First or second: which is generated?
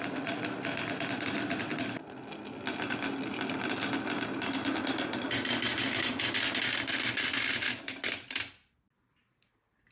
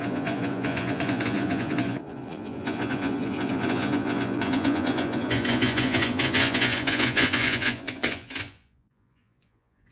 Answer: second